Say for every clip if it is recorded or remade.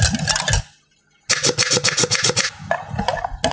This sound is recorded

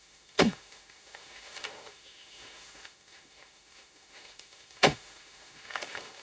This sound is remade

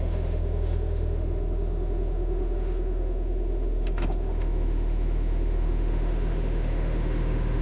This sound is remade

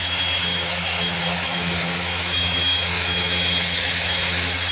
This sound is remade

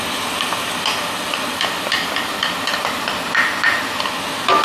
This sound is recorded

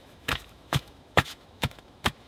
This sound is remade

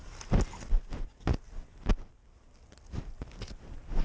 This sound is recorded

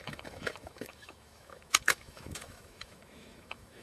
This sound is remade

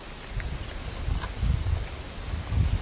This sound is recorded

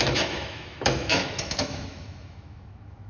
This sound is remade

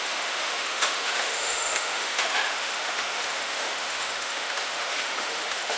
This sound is remade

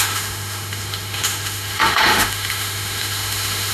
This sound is remade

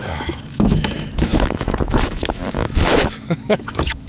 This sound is remade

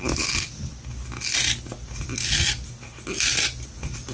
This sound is recorded